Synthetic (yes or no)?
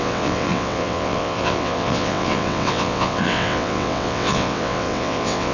yes